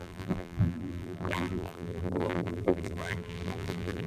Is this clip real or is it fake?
fake